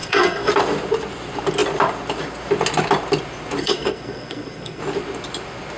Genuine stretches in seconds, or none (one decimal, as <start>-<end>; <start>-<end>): 0.5-3.6; 4.8-5.8